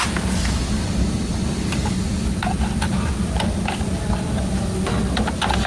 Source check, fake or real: real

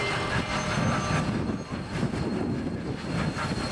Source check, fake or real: real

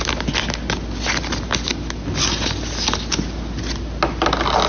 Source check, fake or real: real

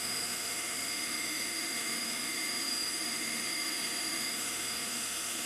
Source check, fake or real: fake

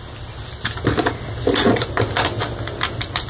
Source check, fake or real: real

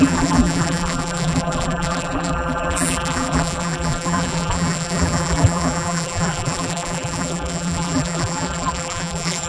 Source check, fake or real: fake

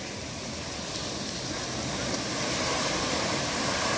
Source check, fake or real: real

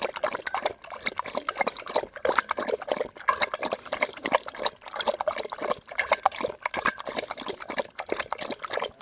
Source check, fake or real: real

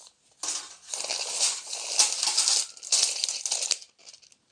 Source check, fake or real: real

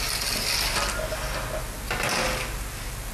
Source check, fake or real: real